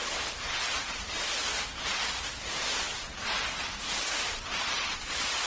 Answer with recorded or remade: remade